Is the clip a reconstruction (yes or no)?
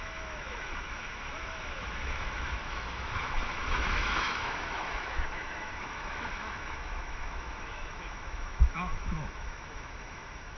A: yes